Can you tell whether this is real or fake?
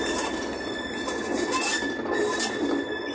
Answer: real